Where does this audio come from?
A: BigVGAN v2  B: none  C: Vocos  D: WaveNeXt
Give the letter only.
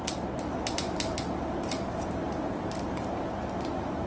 A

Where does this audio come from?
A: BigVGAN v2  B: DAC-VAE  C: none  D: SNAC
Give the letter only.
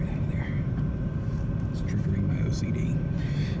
A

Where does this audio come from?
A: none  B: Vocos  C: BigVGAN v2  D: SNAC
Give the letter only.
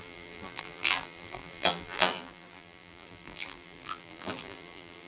C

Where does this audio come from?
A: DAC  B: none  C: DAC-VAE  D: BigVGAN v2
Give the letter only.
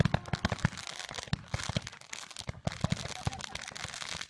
B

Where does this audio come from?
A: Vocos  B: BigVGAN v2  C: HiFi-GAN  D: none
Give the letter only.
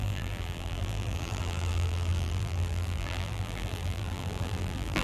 B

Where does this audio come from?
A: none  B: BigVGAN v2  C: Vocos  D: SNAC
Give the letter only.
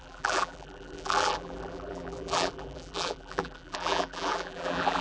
B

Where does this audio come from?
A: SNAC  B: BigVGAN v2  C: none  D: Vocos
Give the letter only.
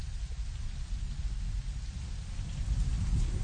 C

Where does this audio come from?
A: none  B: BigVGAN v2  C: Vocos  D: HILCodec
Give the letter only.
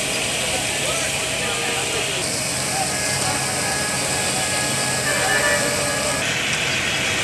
A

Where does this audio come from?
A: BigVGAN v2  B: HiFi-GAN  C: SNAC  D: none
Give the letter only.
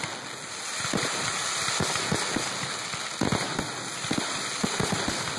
D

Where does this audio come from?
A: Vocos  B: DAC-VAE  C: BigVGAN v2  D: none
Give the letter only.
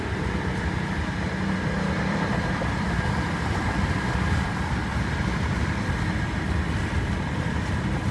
C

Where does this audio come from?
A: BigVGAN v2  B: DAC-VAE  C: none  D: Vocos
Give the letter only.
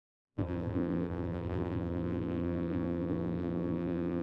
A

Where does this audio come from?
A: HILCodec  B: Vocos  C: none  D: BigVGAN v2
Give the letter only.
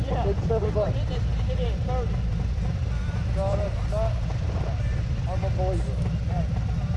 C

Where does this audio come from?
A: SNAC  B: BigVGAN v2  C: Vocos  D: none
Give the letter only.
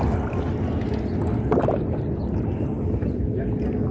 D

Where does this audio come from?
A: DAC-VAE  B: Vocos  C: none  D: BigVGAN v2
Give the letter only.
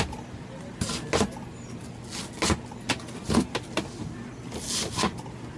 C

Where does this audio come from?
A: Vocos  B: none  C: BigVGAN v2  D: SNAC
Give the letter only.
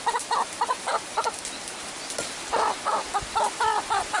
C